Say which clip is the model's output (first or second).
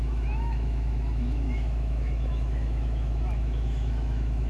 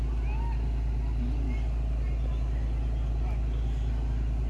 first